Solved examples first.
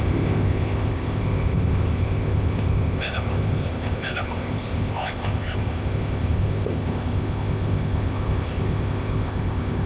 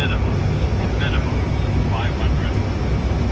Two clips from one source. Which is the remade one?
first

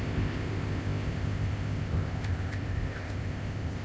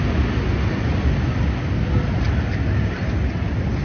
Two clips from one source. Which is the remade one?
first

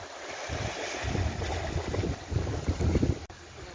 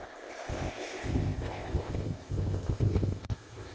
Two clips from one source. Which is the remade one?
second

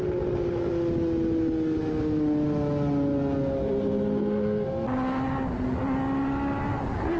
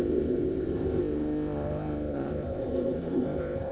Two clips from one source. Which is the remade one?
second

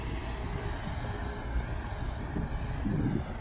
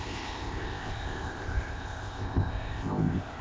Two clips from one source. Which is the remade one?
second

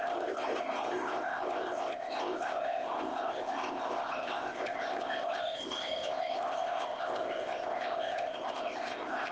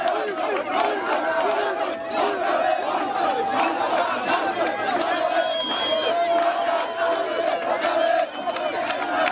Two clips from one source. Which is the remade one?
first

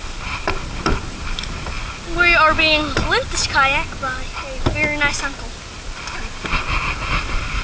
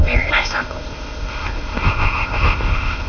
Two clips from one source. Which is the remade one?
second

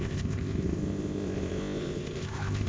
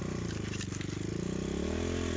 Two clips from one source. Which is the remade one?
first